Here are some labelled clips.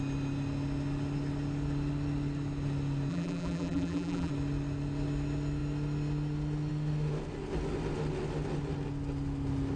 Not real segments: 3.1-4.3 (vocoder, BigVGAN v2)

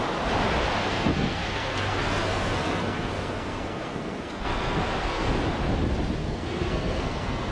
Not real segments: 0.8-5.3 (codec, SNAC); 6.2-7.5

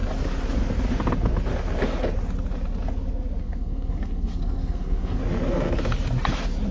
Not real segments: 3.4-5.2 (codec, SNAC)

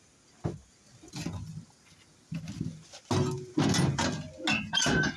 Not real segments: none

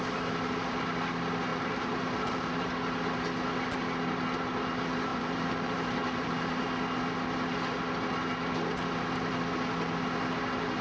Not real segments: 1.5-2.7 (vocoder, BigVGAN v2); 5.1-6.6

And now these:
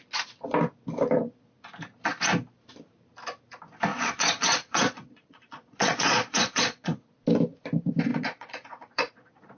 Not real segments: 3.9-7.1 (vocoder, Vocos); 8.1-9.6

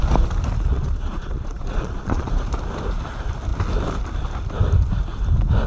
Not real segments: 0.7-2.3 (vocoder, Vocos)

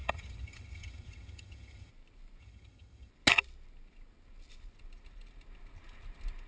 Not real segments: 0.0-1.9 (vocoder, HiFi-GAN); 2.4-3.1